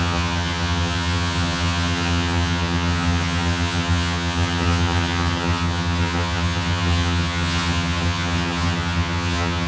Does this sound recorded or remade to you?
remade